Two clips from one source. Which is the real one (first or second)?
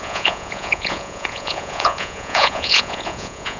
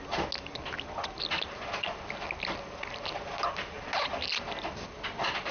second